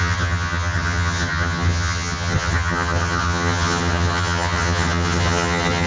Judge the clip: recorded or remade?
remade